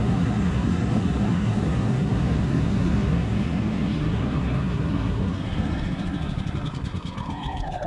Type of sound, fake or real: fake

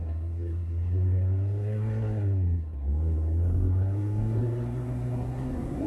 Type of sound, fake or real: fake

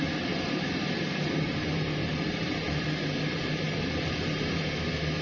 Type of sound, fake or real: fake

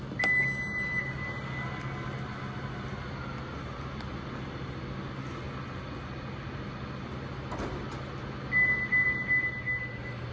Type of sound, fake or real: real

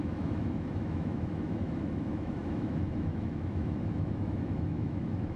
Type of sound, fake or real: fake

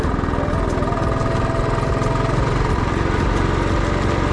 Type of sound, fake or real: real